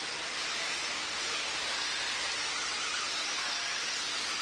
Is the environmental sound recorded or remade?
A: recorded